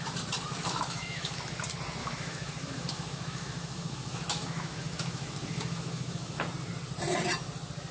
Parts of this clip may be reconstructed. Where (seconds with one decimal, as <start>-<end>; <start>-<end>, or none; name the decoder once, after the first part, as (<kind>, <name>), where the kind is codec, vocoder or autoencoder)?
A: 0.6-1.4 (autoencoder, DAC-VAE); 2.0-6.4